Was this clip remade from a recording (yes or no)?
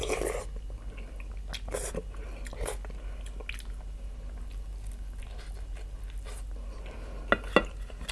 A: no